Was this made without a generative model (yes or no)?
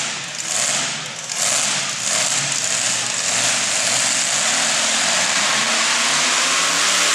yes